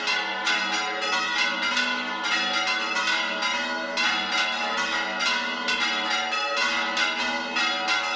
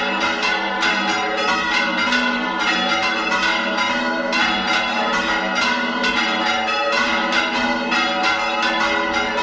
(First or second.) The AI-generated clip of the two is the second